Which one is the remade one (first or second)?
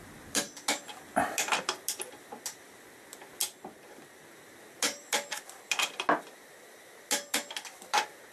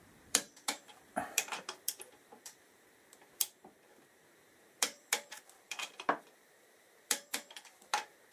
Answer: second